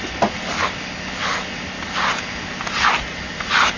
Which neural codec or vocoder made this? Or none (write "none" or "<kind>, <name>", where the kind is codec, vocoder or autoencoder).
none